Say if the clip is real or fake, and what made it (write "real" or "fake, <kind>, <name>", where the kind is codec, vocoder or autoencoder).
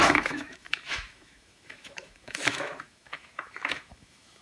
fake, autoencoder, DAC-VAE